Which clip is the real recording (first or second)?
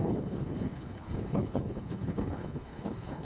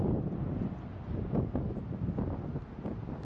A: second